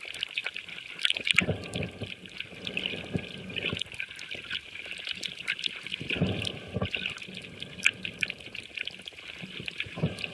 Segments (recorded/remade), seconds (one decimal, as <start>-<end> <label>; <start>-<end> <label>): 0.0-0.4 recorded; 0.4-2.2 remade; 2.2-10.3 recorded